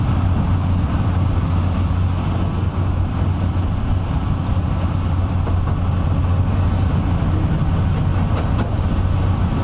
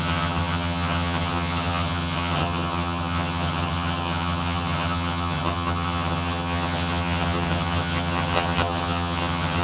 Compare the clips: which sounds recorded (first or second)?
first